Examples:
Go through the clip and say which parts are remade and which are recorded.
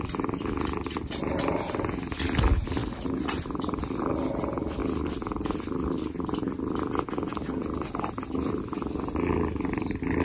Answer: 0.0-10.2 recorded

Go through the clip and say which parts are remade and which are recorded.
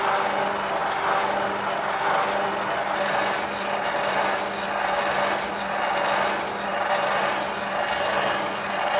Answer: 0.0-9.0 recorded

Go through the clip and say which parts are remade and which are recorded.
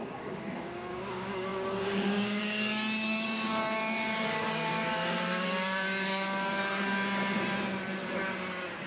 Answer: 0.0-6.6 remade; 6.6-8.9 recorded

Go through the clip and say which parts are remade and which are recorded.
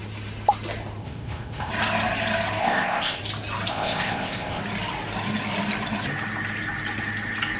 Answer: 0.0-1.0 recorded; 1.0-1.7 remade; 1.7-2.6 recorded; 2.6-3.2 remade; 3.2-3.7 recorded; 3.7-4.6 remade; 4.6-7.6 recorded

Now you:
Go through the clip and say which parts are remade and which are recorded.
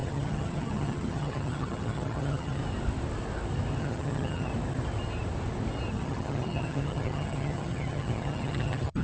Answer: 0.0-2.6 remade; 2.6-3.8 recorded; 3.8-4.5 remade; 4.5-5.9 recorded; 5.9-9.0 remade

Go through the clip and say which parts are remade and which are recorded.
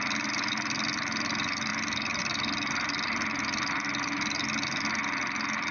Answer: 0.0-5.7 recorded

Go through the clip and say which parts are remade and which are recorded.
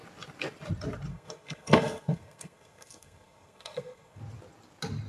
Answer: 0.0-1.1 recorded; 1.1-4.2 remade; 4.2-5.1 recorded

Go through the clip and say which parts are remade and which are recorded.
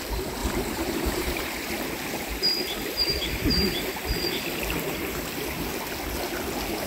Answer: 0.0-0.4 recorded; 0.4-1.4 remade; 1.4-6.9 recorded